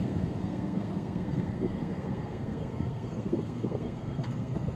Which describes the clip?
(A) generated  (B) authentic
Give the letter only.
A